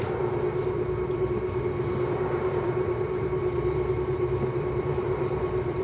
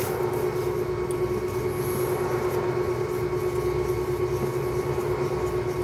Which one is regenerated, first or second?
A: first